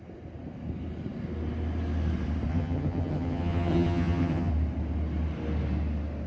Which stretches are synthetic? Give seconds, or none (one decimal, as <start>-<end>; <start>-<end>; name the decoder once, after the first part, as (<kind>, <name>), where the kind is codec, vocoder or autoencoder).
2.5-4.5 (vocoder, HiFi-GAN)